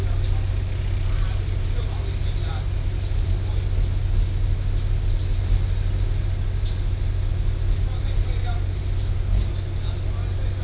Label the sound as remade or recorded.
recorded